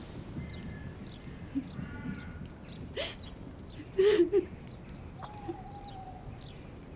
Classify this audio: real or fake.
real